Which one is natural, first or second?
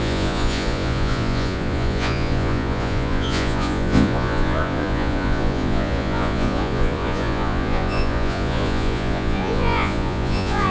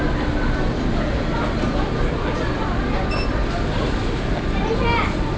second